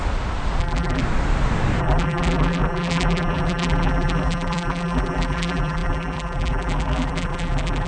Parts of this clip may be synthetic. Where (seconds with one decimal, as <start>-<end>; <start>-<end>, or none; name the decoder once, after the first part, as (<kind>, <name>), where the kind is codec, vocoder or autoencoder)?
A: 0.6-1.0 (vocoder, BigVGAN v2); 1.8-7.9